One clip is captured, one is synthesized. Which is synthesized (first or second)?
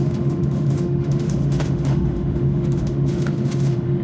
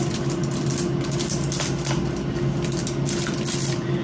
first